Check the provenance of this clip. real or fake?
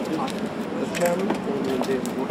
real